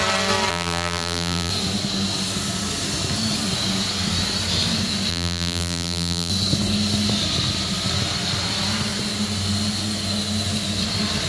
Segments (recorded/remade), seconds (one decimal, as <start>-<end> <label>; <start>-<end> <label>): 0.0-0.5 recorded; 0.5-1.5 remade; 1.5-5.1 recorded; 5.1-6.3 remade; 6.3-11.3 recorded